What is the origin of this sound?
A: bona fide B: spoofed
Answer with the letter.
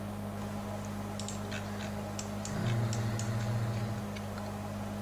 A